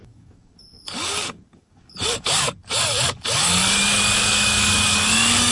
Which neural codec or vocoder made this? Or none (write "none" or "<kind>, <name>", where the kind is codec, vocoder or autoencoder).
codec, DAC